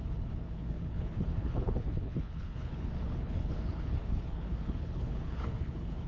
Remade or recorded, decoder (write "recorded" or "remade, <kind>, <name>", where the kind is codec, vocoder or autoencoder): remade, codec, HILCodec